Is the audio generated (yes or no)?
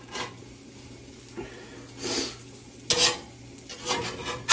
no